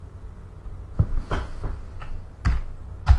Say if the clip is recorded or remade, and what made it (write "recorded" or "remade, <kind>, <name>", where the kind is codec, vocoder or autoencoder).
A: recorded